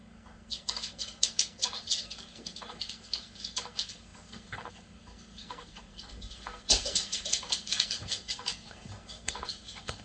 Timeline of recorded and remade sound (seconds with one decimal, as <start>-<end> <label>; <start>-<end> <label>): 0.0-10.0 remade